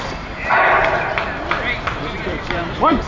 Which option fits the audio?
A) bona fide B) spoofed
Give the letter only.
B